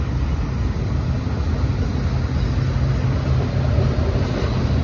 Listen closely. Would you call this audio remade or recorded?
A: recorded